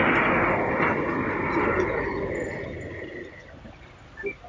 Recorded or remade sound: recorded